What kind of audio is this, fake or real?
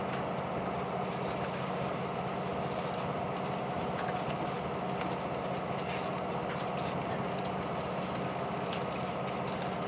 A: real